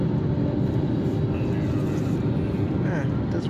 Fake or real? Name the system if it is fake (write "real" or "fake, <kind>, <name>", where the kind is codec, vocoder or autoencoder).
real